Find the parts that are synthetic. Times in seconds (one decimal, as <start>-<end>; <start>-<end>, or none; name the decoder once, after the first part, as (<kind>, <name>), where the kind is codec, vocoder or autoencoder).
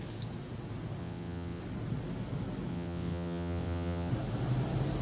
1.0-1.6 (vocoder, WaveNeXt); 2.7-4.1